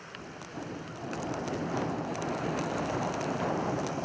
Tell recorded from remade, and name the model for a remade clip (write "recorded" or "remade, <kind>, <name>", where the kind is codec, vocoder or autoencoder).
recorded